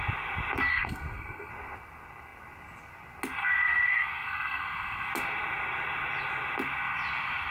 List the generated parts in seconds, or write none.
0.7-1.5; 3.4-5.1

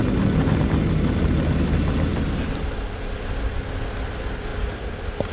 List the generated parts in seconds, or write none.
none

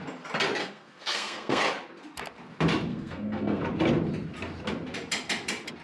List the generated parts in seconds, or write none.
0.6-1.6; 2.9-3.6

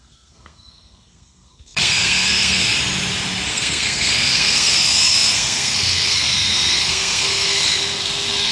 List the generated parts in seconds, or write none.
0.0-2.7; 3.5-8.5

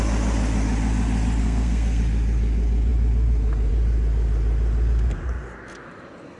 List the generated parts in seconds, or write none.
1.4-2.0